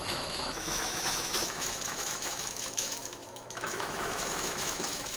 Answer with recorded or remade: remade